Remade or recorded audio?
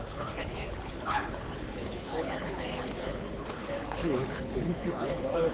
remade